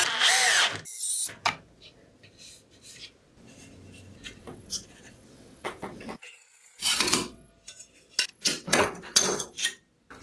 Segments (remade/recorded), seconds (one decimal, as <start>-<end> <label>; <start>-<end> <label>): 0.0-4.4 recorded; 4.4-7.5 remade; 7.5-8.3 recorded; 8.3-9.6 remade; 9.6-10.2 recorded